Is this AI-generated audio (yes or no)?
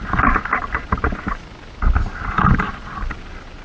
no